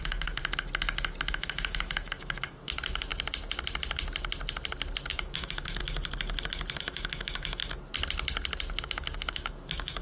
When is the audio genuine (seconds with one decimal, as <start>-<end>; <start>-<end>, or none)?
0.4-1.3; 3.1-5.1; 5.8-6.8; 7.6-8.8